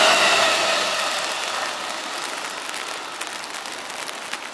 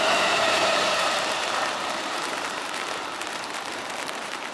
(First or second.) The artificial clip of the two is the second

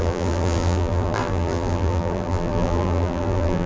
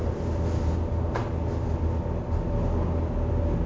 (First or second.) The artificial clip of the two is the first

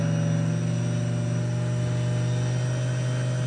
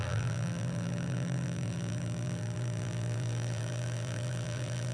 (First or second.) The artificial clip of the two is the second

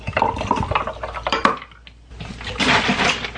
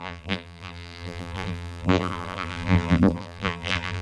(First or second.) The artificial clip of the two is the second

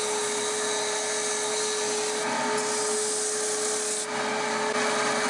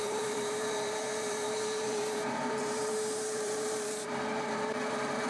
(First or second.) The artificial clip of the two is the second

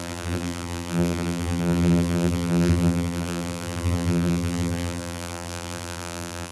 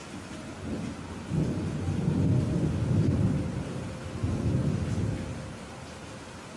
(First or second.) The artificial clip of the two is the first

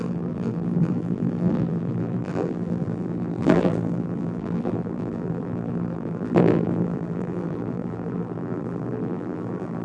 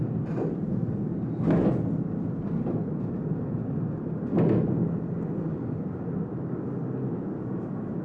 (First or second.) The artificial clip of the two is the first